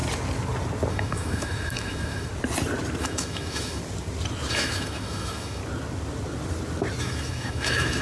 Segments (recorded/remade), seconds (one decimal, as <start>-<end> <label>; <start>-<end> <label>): 0.0-0.9 recorded; 0.9-2.3 remade; 2.3-3.0 recorded; 3.0-3.8 remade; 3.8-4.5 recorded; 4.5-5.6 remade; 5.6-7.0 recorded; 7.0-8.0 remade